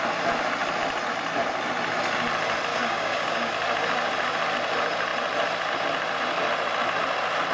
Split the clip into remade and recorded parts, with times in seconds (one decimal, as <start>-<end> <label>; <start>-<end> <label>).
0.0-2.7 recorded; 2.7-3.5 remade; 3.5-7.5 recorded